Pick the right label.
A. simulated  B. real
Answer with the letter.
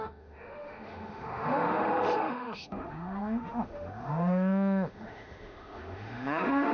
A